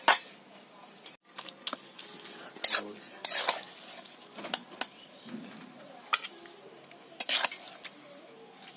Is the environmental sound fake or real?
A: real